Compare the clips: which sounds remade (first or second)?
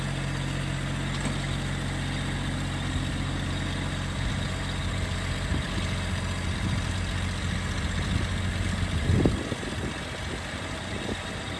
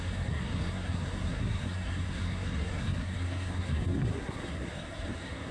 second